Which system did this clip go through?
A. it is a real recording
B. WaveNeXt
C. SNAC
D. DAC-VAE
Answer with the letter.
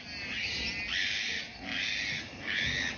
A